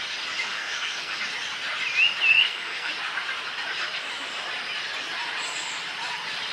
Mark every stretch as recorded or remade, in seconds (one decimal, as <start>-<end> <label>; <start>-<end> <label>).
0.0-0.5 recorded; 0.5-1.2 remade; 1.2-2.3 recorded; 2.3-2.9 remade; 2.9-6.5 recorded